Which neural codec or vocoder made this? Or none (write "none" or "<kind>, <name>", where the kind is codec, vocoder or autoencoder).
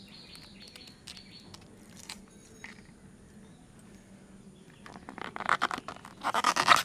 none